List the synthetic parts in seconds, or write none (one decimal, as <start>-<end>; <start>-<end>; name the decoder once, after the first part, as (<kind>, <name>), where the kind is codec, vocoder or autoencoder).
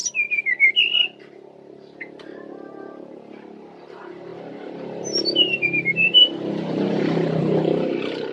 3.9-8.3 (vocoder, BigVGAN v2)